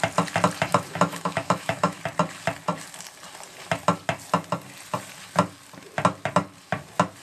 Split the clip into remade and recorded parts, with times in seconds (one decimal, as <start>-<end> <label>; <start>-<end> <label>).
0.0-0.7 recorded; 0.7-2.0 remade; 2.0-7.2 recorded